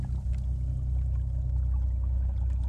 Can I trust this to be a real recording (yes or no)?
yes